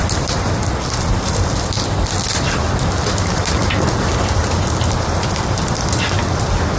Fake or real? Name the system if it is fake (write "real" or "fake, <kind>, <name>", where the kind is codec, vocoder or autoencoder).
fake, vocoder, BigVGAN v2